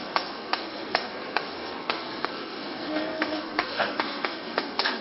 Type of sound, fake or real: fake